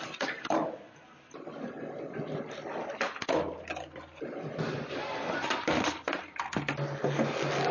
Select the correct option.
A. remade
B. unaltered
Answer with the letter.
B